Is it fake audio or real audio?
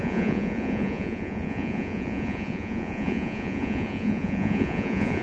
fake